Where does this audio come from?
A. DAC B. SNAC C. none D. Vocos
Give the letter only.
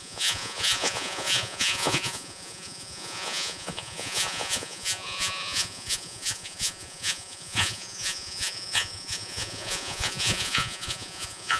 D